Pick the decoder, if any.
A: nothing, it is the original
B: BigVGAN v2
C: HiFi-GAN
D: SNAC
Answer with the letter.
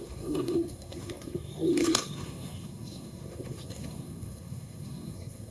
D